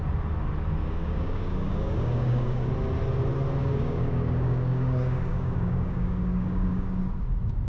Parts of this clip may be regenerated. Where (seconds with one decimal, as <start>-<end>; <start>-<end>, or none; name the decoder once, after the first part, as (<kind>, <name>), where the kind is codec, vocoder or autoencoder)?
0.8-2.7 (codec, DAC); 3.6-6.9